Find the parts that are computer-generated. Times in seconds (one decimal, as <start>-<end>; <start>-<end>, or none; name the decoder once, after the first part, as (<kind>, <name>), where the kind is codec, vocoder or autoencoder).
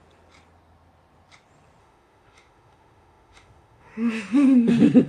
1.8-5.1 (autoencoder, DAC-VAE)